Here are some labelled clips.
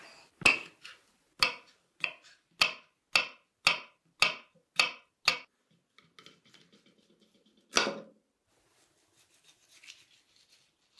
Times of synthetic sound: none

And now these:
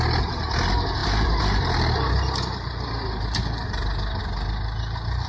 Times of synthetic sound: none

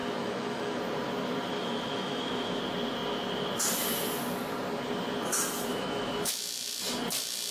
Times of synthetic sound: 0.0-0.8 (autoencoder, DAC-VAE); 1.5-2.6; 5.7-6.3

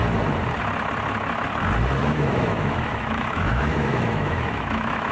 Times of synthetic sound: 2.0-5.1 (autoencoder, DAC-VAE)

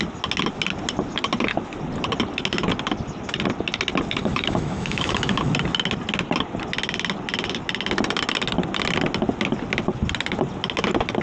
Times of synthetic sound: 4.2-5.5 (autoencoder, DAC-VAE)

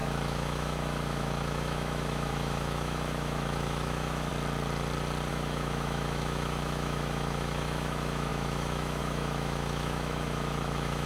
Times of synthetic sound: 0.0-4.3 (autoencoder, DAC-VAE); 5.3-11.1

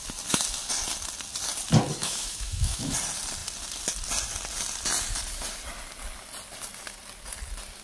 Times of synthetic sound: 2.0-2.9 (autoencoder, DAC-VAE)